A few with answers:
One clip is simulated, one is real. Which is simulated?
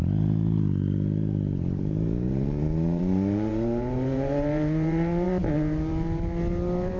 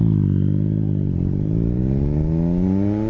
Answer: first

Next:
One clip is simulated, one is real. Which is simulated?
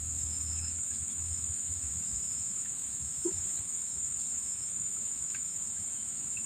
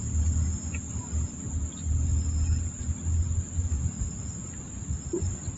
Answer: first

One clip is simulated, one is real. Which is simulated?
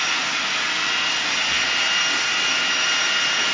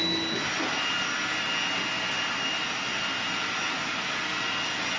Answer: first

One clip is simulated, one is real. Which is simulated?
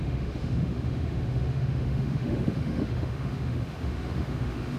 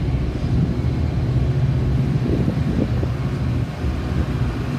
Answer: first